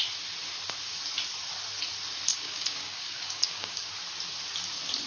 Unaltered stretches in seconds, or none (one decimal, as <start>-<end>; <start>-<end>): 0.0-2.3; 3.9-5.1